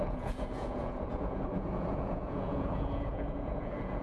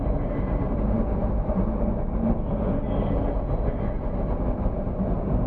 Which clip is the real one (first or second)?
second